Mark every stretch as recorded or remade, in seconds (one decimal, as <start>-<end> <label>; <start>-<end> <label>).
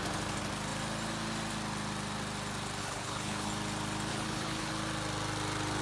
0.0-2.8 recorded; 2.8-3.5 remade; 3.5-4.1 recorded; 4.1-4.7 remade; 4.7-5.8 recorded